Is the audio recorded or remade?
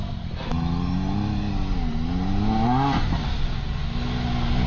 recorded